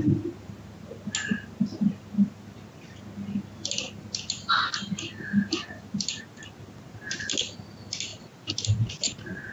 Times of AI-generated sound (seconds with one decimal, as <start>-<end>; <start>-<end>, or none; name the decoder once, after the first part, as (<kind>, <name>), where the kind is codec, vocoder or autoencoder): 8.1-9.0 (vocoder, BigVGAN v2)